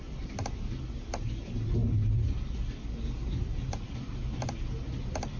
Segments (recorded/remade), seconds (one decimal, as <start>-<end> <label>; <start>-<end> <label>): 0.0-5.4 recorded